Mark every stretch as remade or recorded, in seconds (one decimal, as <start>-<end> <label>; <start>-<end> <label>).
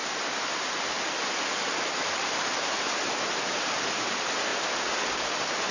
0.0-5.7 recorded